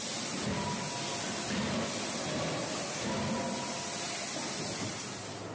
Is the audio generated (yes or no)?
no